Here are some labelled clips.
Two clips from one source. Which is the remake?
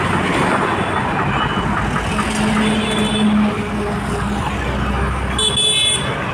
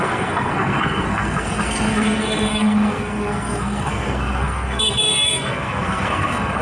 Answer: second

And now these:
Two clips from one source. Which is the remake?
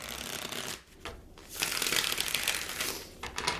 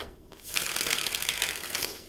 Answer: second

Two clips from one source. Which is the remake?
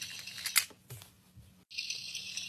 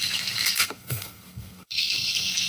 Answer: second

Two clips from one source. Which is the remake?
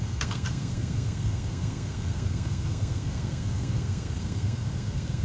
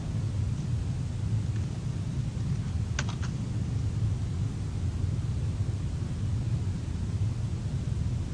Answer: first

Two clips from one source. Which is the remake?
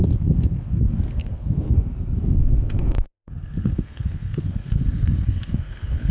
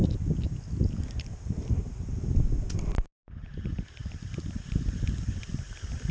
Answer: first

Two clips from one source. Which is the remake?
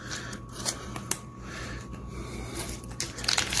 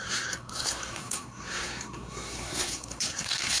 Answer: second